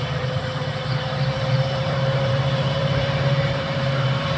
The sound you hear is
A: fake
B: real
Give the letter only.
A